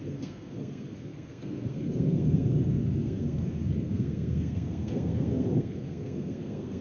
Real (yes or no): no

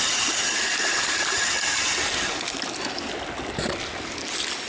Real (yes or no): yes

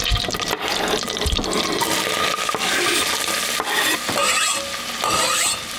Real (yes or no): yes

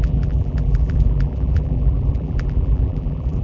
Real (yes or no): no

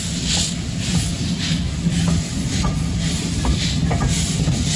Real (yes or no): yes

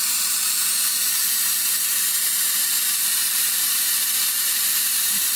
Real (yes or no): no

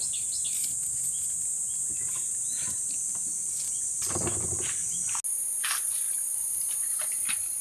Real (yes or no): yes